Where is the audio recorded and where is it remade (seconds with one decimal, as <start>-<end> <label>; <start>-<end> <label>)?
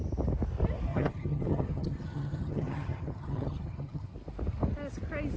0.0-0.9 recorded; 0.9-4.1 remade; 4.1-5.4 recorded